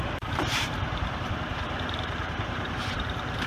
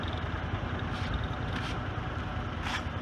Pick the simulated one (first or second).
first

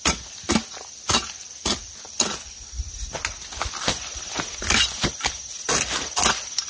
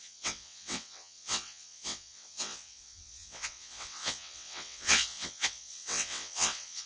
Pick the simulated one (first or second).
second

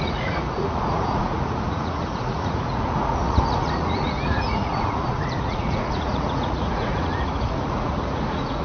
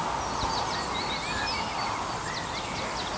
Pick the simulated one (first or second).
first